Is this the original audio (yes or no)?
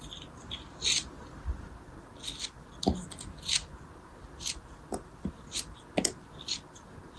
yes